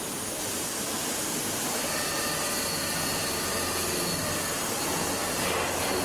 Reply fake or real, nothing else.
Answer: fake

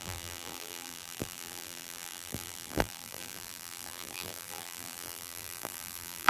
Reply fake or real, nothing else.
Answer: fake